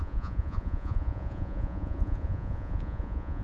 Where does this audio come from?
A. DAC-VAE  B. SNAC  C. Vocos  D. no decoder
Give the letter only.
C